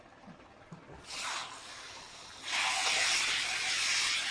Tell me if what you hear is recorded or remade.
recorded